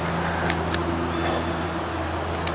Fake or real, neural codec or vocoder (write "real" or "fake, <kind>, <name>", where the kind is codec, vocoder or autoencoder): real